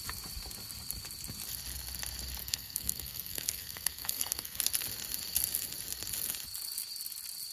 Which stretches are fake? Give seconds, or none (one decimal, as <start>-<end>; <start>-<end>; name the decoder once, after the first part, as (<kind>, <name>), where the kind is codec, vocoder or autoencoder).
2.4-4.6 (codec, SNAC)